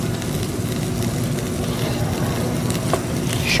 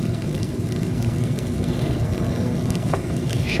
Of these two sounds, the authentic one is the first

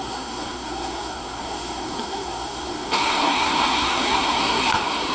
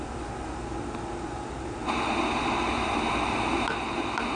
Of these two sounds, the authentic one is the second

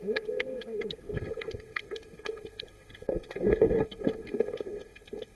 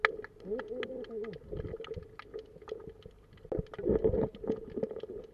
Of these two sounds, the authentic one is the second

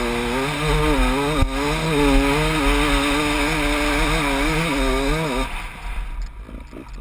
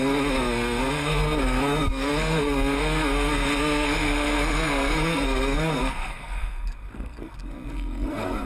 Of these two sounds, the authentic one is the first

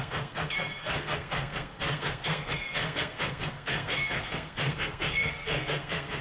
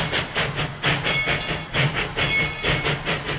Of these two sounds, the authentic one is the second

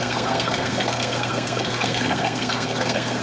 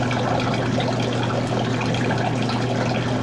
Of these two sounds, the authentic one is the second